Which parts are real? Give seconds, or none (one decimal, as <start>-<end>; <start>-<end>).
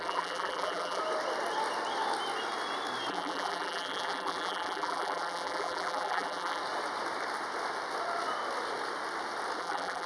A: 1.0-3.1; 6.6-9.6